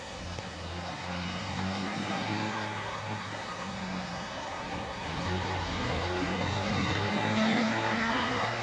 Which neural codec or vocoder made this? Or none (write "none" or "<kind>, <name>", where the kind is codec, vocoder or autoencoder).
codec, SNAC